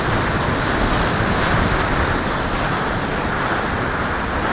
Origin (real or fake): real